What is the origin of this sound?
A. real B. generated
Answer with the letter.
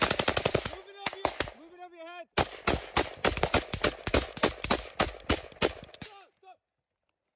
A